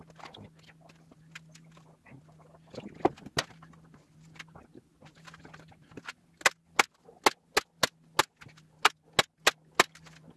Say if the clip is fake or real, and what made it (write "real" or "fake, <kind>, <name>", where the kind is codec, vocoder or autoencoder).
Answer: real